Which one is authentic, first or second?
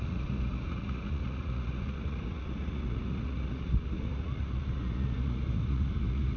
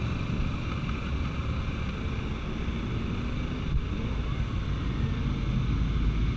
second